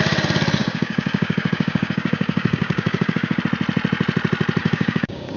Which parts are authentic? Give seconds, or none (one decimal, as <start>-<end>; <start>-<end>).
0.0-0.6; 3.4-4.6